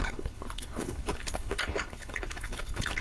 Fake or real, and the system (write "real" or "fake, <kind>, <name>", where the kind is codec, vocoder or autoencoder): fake, codec, HILCodec